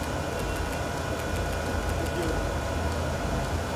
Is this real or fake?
real